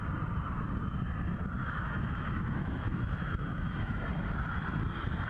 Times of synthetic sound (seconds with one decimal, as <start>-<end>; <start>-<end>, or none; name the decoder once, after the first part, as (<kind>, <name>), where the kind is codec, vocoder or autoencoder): 1.6-4.0 (autoencoder, DAC-VAE)